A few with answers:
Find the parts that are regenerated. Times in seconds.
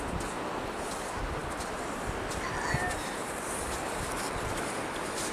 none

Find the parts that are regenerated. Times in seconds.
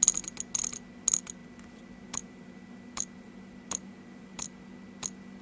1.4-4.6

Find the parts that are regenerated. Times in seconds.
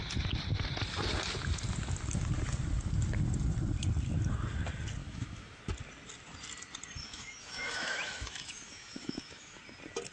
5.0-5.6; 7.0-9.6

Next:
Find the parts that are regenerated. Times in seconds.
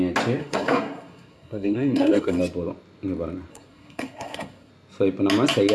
0.4-2.4; 3.5-4.7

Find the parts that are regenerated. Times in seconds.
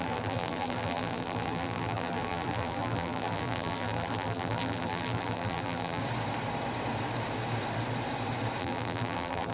0.0-6.0; 8.6-9.5